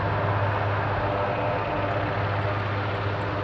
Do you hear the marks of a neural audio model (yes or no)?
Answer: no